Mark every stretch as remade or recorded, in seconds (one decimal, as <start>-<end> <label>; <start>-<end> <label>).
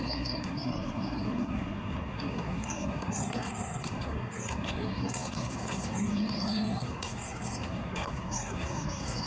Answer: 0.0-9.3 remade